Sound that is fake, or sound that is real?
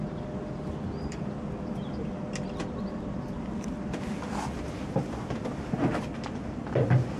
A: real